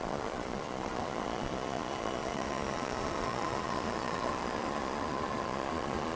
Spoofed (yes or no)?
yes